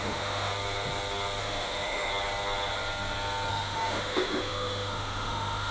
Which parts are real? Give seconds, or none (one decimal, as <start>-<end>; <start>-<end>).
0.5-1.4; 2.1-3.5